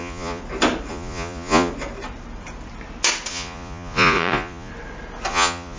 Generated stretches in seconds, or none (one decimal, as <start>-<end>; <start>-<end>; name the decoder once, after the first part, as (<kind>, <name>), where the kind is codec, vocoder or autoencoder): 0.0-0.4 (vocoder, Vocos); 0.9-1.7; 3.3-4.7; 5.3-5.8